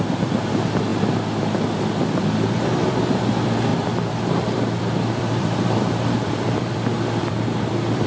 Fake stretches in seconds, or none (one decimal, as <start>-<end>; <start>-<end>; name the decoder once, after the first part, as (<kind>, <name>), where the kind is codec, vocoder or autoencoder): 3.7-6.8 (vocoder, BigVGAN v2); 7.2-8.1